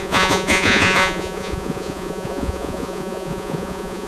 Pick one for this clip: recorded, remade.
remade